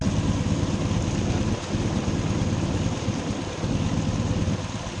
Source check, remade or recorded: recorded